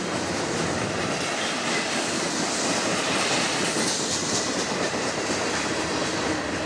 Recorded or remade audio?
remade